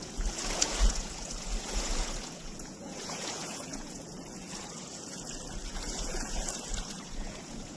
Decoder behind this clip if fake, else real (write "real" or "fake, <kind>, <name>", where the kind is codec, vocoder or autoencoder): fake, vocoder, Vocos